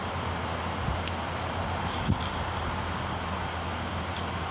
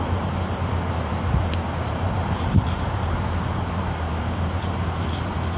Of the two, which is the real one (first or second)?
first